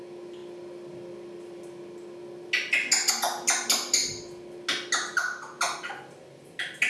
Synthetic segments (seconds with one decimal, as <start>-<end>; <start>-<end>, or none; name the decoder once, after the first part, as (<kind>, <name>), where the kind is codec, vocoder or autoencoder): none